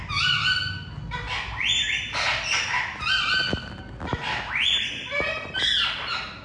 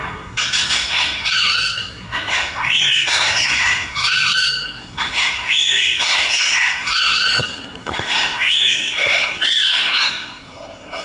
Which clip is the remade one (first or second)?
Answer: second